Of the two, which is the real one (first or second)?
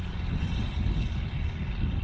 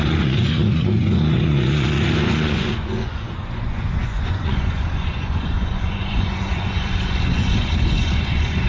first